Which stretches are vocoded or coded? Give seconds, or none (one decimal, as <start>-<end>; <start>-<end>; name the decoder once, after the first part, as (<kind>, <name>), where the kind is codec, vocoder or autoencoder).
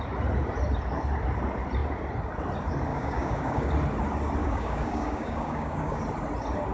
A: 2.9-3.7 (codec, DAC); 4.4-6.0